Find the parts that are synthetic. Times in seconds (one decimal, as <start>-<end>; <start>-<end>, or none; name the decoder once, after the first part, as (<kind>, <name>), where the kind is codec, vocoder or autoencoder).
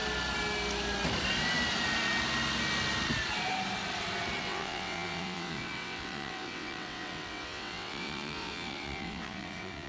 4.4-9.9 (vocoder, WaveNeXt)